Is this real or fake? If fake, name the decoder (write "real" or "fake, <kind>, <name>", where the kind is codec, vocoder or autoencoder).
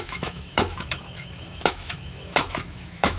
fake, autoencoder, DAC-VAE